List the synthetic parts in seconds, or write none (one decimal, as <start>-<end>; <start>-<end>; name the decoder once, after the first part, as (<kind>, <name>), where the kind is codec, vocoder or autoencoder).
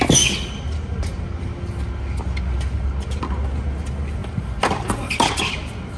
none